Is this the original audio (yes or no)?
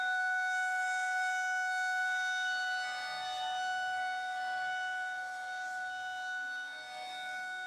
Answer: no